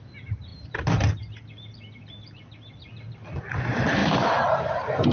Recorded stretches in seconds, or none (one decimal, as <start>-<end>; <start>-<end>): 0.0-5.1